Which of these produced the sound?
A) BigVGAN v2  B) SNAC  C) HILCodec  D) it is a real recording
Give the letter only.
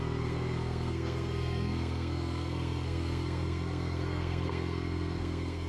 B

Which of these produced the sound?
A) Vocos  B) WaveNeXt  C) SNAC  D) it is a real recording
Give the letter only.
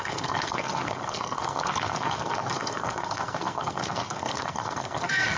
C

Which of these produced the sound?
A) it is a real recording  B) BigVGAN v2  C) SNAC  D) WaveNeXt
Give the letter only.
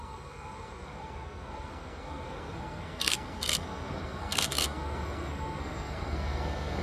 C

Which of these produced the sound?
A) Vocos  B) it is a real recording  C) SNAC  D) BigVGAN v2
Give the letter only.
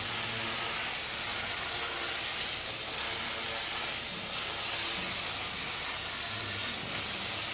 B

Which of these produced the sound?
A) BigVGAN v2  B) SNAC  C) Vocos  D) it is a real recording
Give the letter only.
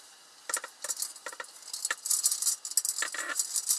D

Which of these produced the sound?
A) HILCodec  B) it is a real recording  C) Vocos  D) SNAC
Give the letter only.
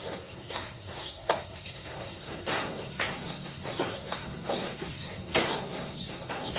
D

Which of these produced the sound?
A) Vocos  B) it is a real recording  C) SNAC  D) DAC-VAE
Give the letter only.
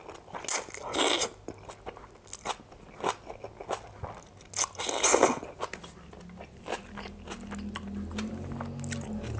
B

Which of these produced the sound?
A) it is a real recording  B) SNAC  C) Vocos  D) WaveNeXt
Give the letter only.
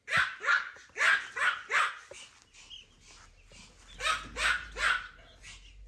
A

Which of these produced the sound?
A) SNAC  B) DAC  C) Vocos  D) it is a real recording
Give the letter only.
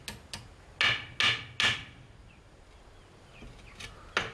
D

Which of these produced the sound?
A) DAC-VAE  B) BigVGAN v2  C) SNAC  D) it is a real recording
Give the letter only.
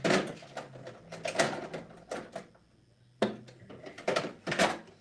D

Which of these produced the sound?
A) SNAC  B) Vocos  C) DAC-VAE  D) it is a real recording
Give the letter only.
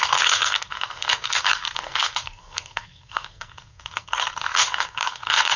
A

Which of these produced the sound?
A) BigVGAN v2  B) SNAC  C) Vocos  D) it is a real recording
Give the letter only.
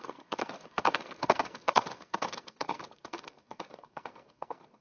B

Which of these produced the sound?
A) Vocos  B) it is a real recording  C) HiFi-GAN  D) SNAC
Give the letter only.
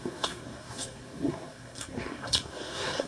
D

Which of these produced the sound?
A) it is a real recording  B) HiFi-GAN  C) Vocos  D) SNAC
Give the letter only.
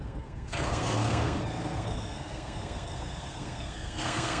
D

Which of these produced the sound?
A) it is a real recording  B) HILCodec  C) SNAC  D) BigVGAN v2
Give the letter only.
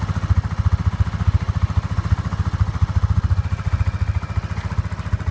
A